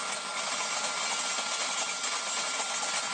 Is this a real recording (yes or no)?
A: yes